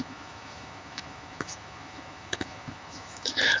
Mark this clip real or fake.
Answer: fake